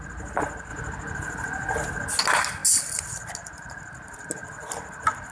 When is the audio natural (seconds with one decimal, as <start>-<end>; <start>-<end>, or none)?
0.0-5.3